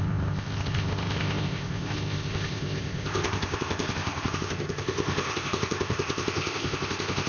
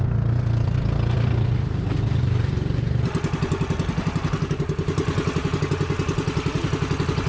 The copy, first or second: first